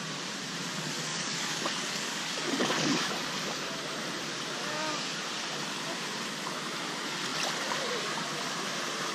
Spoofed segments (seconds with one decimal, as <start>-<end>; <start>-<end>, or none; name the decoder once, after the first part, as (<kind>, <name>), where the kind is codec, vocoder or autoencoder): 1.1-3.1 (codec, DAC)